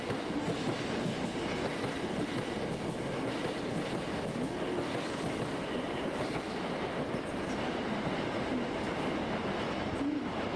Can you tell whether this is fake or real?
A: real